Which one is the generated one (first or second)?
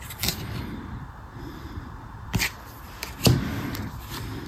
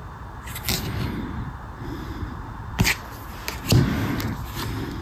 first